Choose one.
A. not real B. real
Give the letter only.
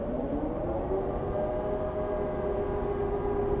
B